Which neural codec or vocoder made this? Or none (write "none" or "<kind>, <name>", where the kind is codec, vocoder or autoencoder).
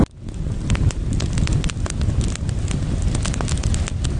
none